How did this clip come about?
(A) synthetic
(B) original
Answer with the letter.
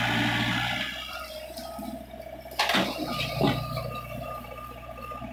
B